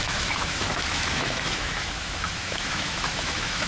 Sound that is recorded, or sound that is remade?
remade